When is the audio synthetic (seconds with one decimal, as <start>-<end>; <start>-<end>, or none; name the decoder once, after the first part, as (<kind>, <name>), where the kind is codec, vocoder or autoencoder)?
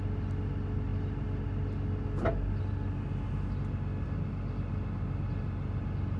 none